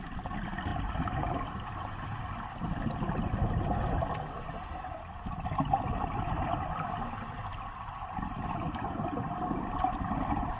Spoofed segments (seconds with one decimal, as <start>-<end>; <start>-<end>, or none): none